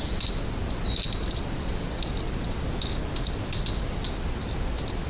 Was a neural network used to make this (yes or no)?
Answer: no